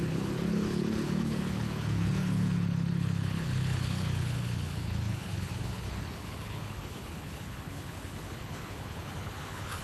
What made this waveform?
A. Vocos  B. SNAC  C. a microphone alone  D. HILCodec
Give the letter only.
D